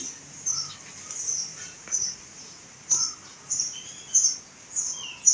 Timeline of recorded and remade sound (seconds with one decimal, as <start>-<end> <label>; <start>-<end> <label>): 0.0-1.5 recorded; 1.5-3.6 remade; 3.6-5.3 recorded